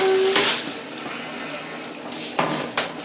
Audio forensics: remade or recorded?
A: recorded